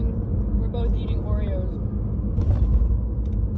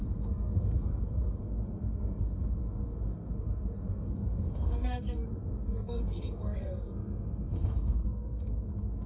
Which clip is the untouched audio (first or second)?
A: first